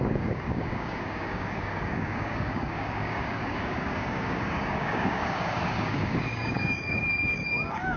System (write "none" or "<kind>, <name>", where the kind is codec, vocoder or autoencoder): codec, DAC